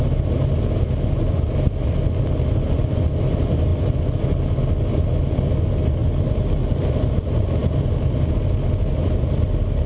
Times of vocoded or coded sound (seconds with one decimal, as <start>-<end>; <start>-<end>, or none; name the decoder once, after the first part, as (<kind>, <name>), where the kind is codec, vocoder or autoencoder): none